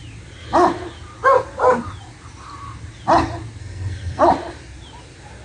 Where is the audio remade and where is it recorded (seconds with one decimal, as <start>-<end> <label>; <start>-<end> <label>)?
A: 0.0-3.6 recorded; 3.6-4.2 remade; 4.2-5.4 recorded